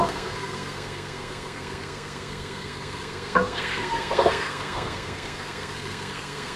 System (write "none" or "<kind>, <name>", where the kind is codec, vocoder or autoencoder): codec, SNAC